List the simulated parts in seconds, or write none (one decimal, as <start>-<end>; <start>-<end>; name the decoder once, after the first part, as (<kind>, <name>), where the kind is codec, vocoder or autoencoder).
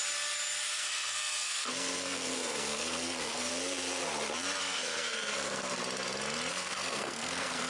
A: 0.7-3.5 (codec, SNAC); 4.6-5.8; 6.5-7.7